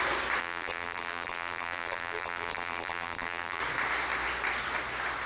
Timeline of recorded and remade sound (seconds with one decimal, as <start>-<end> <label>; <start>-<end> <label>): 0.0-0.4 recorded; 0.4-3.6 remade; 3.6-5.3 recorded